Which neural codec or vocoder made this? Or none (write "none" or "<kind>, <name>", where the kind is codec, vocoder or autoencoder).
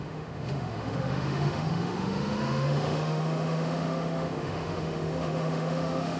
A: autoencoder, DAC-VAE